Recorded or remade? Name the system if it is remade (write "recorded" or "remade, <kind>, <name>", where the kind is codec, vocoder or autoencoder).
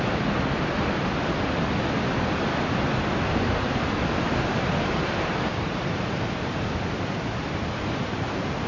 remade, vocoder, BigVGAN v2